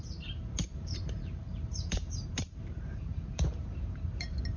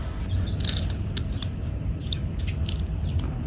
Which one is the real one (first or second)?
second